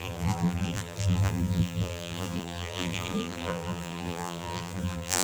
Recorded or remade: remade